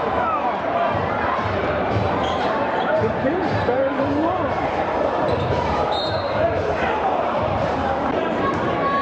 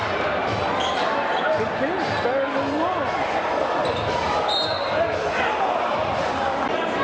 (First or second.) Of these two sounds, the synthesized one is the first